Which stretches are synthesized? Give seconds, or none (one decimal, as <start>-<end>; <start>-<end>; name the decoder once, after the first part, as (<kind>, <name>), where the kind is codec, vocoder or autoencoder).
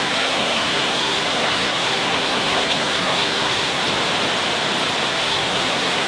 0.0-3.8 (codec, SNAC); 5.1-6.1